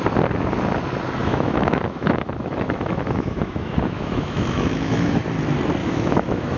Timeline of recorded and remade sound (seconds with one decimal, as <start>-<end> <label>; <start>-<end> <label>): 0.0-1.2 recorded; 1.2-5.2 remade; 5.2-5.8 recorded; 5.8-6.6 remade